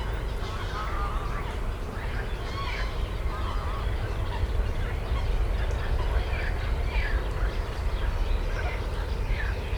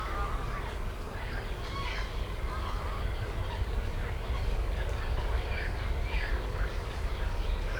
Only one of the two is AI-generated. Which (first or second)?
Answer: second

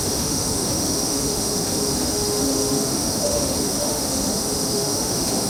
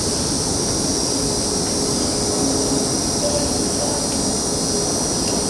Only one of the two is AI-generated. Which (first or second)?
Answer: first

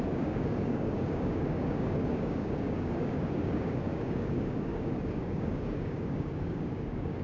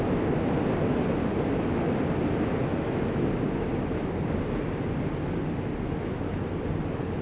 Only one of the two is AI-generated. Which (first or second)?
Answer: first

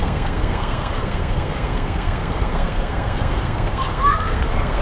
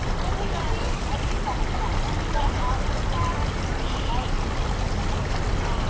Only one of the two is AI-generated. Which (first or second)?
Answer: first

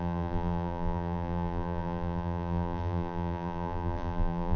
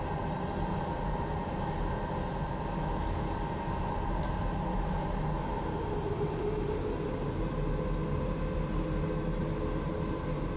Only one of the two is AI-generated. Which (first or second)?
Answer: first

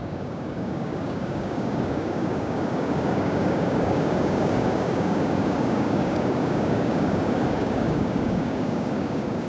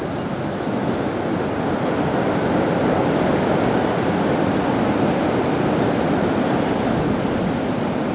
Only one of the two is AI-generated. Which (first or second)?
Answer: first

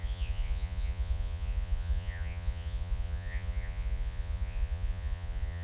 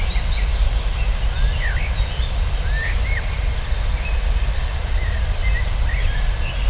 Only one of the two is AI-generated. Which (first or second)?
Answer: first